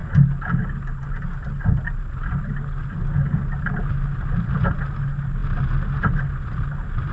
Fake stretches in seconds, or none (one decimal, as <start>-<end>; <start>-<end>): none